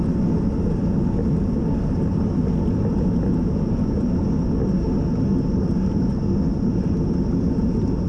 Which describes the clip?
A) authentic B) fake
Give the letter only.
A